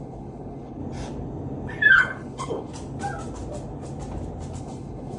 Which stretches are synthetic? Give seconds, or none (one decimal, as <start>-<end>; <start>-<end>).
0.0-0.8; 1.9-2.7; 4.6-5.2

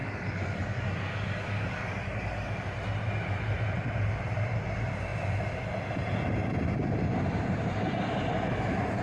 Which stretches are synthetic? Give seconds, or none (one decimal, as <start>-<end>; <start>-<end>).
0.0-2.7

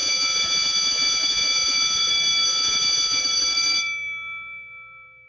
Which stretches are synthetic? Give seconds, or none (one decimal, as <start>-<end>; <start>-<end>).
0.0-2.1; 2.5-3.2

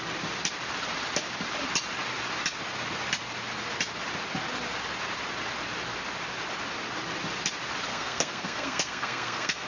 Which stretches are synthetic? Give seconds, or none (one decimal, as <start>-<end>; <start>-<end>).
7.9-9.7

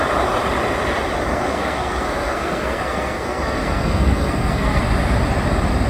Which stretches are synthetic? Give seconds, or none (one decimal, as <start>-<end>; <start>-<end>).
1.3-4.8

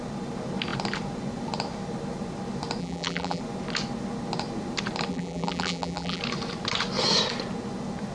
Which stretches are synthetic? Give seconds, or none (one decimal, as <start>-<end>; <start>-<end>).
2.8-3.4; 5.1-6.2

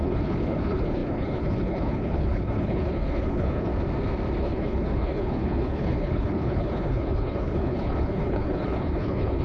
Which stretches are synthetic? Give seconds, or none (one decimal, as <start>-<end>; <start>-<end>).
0.0-3.7; 4.4-9.4

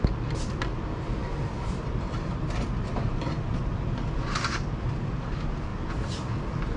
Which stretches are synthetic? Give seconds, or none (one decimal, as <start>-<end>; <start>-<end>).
none